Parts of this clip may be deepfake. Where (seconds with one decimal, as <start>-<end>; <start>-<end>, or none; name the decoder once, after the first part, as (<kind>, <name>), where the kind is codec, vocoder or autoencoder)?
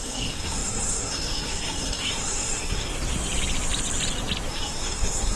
0.0-2.9 (codec, SNAC); 4.5-5.4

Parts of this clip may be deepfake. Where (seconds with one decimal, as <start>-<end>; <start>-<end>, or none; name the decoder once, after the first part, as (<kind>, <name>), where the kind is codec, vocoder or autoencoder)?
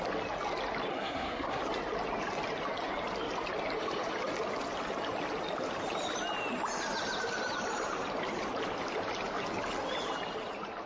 0.9-1.6 (codec, SNAC)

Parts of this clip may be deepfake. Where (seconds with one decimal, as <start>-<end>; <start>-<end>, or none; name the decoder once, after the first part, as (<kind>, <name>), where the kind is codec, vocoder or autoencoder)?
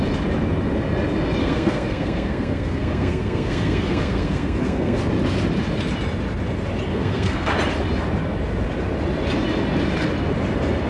1.4-5.0 (codec, SNAC); 6.9-7.5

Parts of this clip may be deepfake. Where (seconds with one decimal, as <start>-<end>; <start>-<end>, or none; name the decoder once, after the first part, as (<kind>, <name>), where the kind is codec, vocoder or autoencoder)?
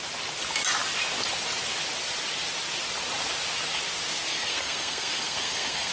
4.3-5.9 (codec, SNAC)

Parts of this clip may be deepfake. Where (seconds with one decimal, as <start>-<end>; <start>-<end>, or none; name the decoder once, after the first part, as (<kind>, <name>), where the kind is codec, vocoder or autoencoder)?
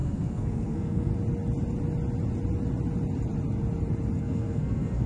0.0-1.1 (codec, SNAC); 4.2-5.1